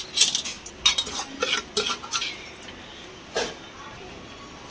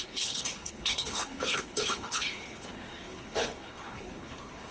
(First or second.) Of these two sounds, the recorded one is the first